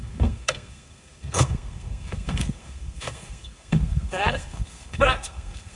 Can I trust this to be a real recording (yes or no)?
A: no